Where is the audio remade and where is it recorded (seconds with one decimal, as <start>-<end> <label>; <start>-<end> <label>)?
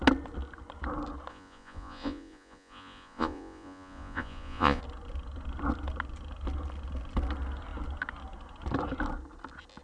0.0-1.3 recorded; 1.3-4.8 remade; 4.8-9.8 recorded